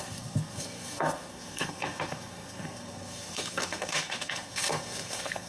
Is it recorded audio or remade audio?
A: remade